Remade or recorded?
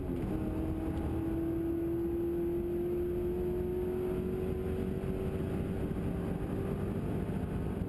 recorded